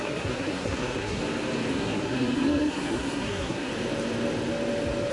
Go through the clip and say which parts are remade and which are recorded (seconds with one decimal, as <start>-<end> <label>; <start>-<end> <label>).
0.0-1.2 remade; 1.2-1.7 recorded; 1.7-3.7 remade; 3.7-5.1 recorded